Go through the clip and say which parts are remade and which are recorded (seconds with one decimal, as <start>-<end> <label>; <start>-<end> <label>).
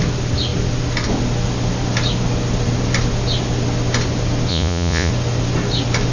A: 0.0-4.5 recorded; 4.5-5.1 remade; 5.1-6.1 recorded